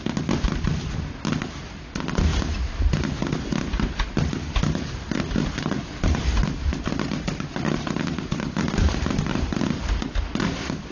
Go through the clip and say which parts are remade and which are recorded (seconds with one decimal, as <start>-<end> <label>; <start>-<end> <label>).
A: 0.0-10.9 recorded